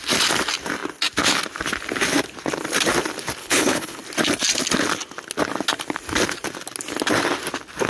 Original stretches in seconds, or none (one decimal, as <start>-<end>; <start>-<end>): 0.0-3.4; 4.0-7.9